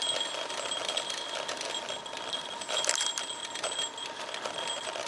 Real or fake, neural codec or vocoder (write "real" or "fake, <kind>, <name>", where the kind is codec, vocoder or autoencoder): real